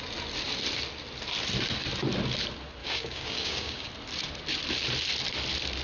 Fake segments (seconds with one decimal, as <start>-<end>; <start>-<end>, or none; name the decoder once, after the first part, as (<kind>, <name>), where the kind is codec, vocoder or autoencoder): 2.8-3.9 (codec, DAC)